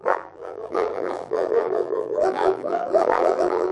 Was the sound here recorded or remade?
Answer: remade